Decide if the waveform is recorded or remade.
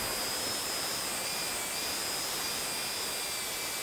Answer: recorded